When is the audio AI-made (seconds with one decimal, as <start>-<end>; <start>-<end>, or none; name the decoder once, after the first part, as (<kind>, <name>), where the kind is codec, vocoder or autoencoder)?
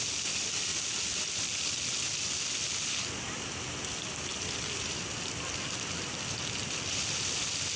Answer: none